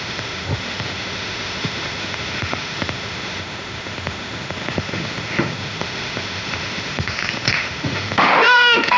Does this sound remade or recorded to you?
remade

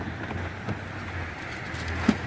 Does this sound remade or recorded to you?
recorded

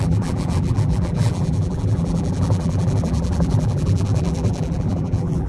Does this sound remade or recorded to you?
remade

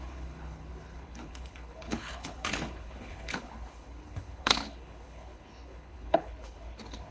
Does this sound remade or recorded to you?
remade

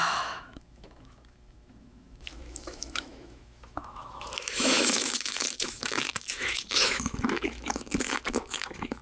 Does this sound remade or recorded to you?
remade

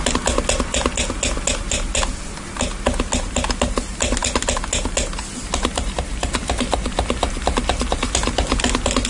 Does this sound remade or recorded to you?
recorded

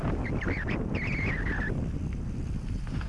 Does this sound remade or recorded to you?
recorded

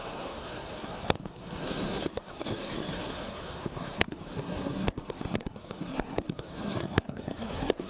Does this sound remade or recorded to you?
remade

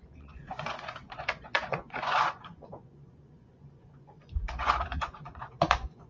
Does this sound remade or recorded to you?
remade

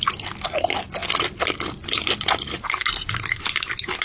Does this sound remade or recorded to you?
recorded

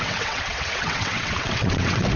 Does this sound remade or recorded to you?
remade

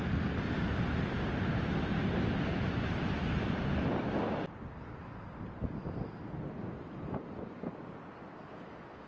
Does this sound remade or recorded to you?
recorded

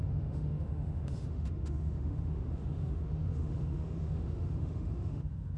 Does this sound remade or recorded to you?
remade